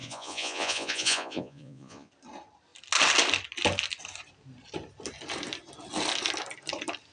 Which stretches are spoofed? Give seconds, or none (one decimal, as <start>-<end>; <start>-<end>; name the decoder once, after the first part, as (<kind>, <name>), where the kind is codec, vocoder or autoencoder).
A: 0.0-2.1 (vocoder, Vocos)